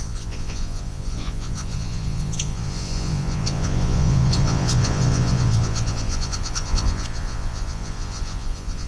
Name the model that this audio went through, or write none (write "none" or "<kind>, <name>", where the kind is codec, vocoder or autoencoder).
vocoder, Vocos